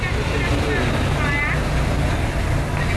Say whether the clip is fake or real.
real